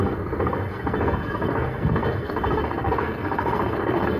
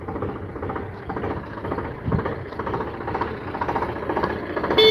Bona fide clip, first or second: second